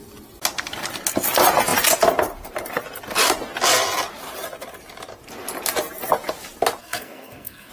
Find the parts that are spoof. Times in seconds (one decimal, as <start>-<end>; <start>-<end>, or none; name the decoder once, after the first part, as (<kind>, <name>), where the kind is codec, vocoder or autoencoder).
6.8-7.7 (codec, SNAC)